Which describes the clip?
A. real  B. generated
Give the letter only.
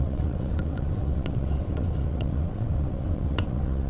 B